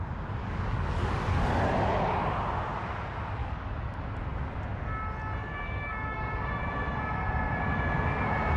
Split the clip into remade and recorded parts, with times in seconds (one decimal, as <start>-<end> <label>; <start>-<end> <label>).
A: 0.0-0.4 recorded; 0.4-1.6 remade; 1.6-3.4 recorded; 3.4-4.0 remade; 4.0-5.4 recorded; 5.4-6.5 remade; 6.5-8.6 recorded